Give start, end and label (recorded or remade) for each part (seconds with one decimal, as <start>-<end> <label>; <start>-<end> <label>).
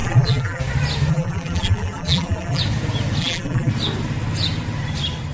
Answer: 0.0-0.6 remade; 0.6-1.1 recorded; 1.1-2.6 remade; 2.6-3.2 recorded; 3.2-3.7 remade; 3.7-5.3 recorded